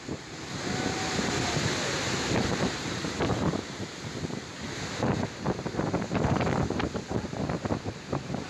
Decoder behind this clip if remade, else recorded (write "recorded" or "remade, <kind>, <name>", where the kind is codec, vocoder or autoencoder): remade, vocoder, BigVGAN v2